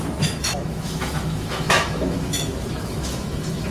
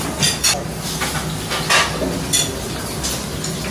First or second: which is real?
second